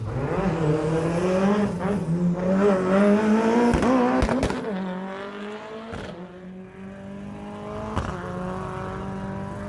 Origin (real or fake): real